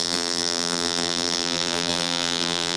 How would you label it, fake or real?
fake